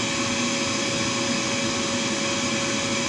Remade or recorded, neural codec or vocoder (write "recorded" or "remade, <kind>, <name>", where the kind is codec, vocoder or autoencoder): recorded